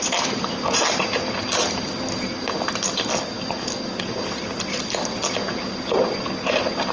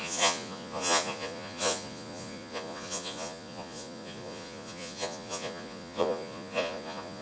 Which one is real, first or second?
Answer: first